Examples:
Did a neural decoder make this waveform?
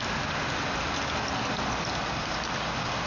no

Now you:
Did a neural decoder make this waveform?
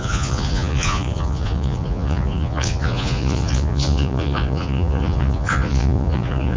yes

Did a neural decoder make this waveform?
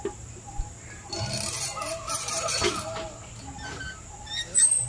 no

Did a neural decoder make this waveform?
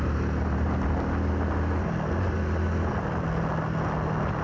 no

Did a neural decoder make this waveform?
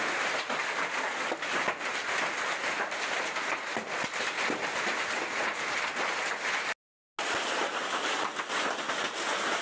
no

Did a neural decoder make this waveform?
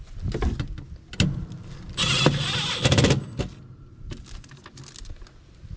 no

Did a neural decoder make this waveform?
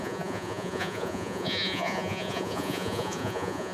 yes